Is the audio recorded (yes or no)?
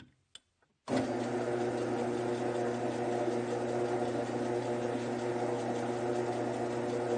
yes